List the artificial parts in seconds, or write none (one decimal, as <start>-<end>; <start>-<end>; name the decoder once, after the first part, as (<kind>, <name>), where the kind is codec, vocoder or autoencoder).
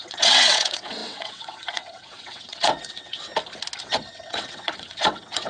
0.0-3.3 (vocoder, WaveNeXt); 3.8-5.5